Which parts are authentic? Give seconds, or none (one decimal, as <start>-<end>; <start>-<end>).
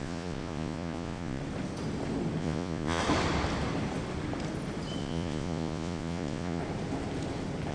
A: 1.4-2.4; 3.0-5.0; 6.6-7.7